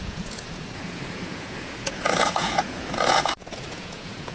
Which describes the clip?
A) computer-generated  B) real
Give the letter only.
A